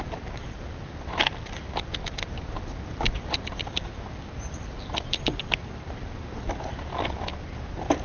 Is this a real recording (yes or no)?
yes